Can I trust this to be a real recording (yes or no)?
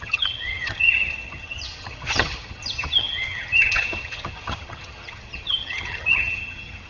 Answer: no